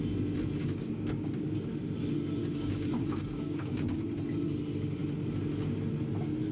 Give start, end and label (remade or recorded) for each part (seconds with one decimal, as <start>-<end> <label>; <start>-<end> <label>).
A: 0.0-0.6 recorded; 0.6-1.3 remade; 1.3-2.4 recorded; 2.4-4.0 remade; 4.0-6.5 recorded